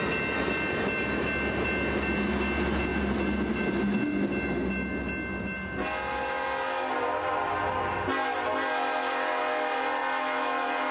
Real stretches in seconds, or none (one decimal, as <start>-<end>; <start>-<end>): 0.0-10.9